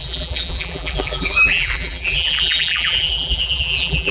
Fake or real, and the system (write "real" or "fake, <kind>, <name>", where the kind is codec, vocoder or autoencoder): fake, vocoder, BigVGAN v2